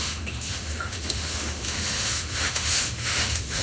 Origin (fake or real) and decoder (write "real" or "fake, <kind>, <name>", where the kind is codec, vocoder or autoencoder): fake, autoencoder, DAC-VAE